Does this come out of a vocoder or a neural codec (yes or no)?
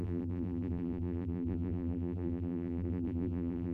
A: yes